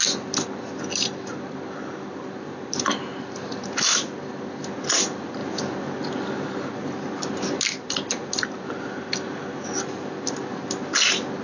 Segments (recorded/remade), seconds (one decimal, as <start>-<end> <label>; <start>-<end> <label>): 0.0-11.4 recorded